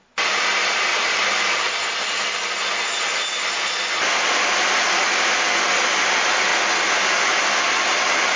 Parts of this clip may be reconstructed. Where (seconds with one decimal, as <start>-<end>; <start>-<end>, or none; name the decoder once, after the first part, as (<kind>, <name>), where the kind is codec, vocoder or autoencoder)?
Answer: none